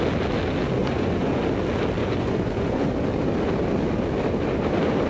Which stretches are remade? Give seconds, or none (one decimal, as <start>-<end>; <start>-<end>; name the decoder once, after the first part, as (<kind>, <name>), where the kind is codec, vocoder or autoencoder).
0.8-1.4 (vocoder, Vocos); 2.0-2.9